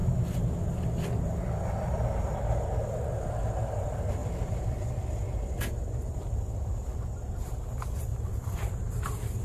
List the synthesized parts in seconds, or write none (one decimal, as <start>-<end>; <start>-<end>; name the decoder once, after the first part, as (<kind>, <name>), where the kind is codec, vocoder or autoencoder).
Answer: 4.2-4.9 (vocoder, BigVGAN v2); 8.1-8.7